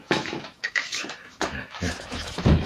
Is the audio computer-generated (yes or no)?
yes